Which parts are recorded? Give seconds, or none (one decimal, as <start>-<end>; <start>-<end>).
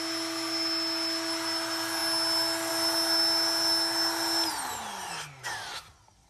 0.0-6.3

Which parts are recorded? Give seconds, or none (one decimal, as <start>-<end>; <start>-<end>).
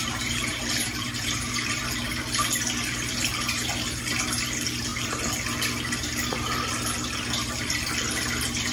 1.8-8.7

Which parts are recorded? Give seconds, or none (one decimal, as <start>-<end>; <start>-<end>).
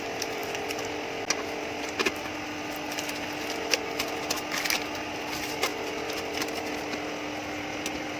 0.0-8.2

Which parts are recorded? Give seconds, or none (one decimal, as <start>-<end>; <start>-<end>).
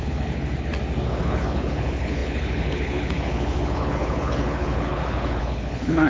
0.7-1.2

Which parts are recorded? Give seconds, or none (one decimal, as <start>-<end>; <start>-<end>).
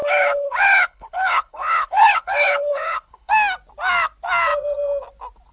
3.3-5.5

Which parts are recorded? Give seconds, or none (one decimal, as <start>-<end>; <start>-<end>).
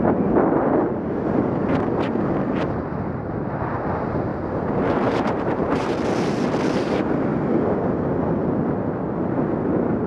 0.0-4.3; 5.9-10.1